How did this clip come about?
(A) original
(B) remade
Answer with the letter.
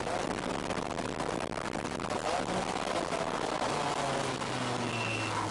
A